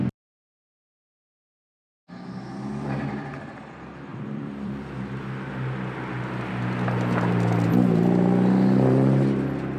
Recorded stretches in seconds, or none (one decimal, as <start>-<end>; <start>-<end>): 0.0-4.1; 5.5-9.8